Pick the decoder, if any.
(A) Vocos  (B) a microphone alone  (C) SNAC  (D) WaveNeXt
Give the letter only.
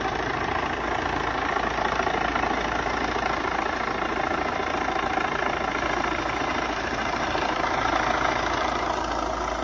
B